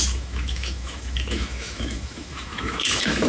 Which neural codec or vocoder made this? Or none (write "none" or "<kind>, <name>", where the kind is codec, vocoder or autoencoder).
autoencoder, DAC-VAE